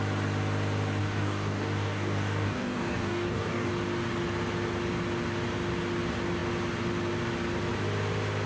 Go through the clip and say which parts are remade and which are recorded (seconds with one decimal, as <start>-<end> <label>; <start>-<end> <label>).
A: 0.0-1.0 recorded; 1.0-3.7 remade; 3.7-8.5 recorded